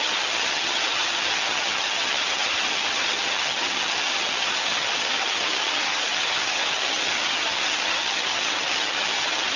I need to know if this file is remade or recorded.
remade